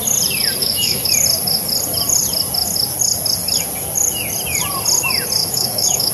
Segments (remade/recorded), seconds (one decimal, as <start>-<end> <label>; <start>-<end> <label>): 0.0-0.6 recorded; 0.6-1.1 remade; 1.1-5.4 recorded; 5.4-6.1 remade